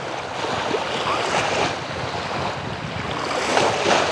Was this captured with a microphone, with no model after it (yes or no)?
yes